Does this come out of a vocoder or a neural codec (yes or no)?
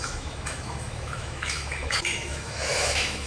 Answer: yes